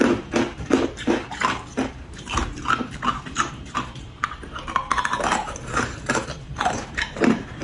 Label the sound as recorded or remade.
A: remade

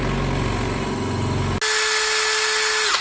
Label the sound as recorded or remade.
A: recorded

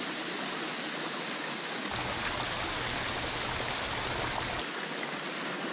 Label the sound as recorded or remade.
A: recorded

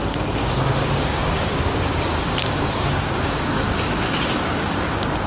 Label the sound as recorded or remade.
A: remade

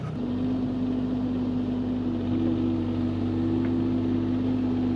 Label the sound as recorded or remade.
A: recorded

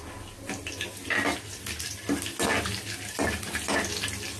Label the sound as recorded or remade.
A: recorded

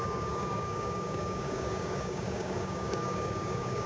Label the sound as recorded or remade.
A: remade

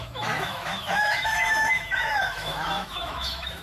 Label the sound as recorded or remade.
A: remade